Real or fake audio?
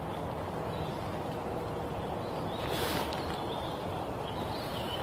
real